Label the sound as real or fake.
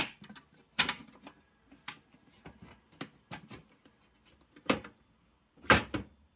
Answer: real